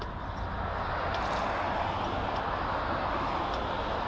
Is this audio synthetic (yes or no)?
no